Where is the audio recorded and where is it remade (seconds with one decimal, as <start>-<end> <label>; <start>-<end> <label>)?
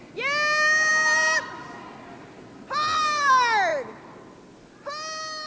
0.0-5.5 recorded